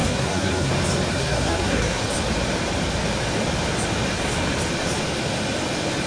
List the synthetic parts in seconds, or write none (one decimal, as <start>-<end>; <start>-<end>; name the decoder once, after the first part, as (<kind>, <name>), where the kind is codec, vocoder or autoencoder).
0.0-0.7 (codec, SNAC); 1.1-2.0

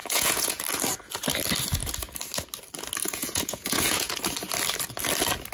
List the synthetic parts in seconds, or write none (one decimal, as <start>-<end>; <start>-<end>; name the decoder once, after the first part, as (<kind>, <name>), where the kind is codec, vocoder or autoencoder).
0.0-0.6 (vocoder, Vocos); 3.0-4.2